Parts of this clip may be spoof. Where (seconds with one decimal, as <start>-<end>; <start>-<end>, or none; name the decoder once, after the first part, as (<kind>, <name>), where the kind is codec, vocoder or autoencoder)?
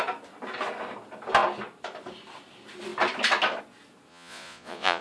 4.1-5.0 (vocoder, Vocos)